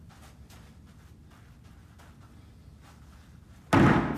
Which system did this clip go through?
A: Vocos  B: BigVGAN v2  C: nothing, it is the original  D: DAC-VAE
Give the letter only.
C